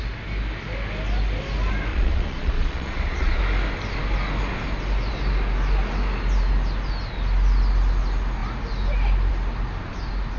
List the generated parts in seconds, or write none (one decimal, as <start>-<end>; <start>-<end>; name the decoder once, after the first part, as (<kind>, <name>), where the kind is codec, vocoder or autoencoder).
1.9-3.4 (vocoder, Vocos)